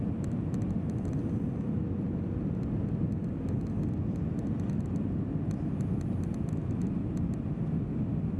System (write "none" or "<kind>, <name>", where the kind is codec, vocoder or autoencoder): none